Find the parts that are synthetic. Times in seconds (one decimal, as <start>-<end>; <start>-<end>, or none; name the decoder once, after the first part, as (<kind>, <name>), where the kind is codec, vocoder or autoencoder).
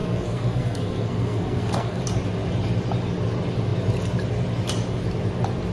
0.0-2.0 (codec, SNAC)